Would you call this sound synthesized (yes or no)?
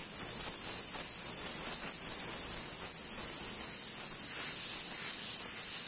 no